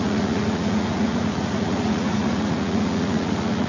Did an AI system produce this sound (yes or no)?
yes